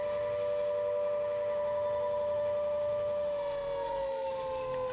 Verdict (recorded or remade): remade